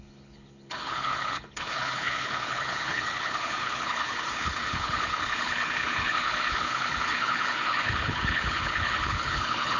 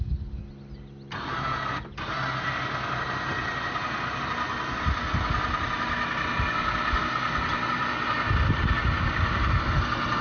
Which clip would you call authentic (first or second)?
second